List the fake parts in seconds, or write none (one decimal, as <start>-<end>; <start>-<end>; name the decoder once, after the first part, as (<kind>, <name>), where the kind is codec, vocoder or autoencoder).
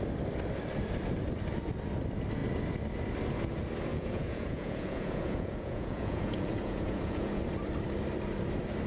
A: 3.9-7.4 (vocoder, Vocos)